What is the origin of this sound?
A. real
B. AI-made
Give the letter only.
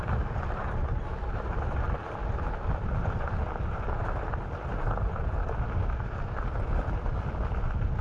A